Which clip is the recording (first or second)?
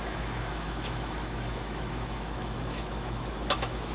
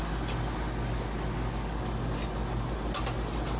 second